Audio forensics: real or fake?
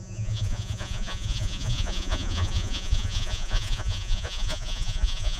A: fake